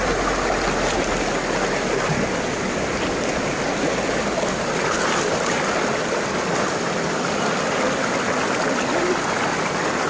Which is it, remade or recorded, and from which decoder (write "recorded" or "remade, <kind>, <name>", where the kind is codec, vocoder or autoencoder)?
recorded